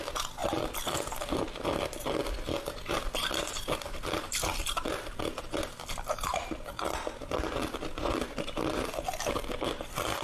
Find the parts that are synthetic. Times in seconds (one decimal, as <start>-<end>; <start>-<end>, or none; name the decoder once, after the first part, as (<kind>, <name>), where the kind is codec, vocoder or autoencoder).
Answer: none